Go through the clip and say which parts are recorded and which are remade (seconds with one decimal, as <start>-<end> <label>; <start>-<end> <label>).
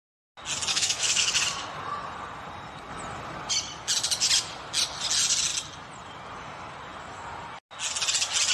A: 0.0-0.7 recorded; 0.7-1.3 remade; 1.3-8.5 recorded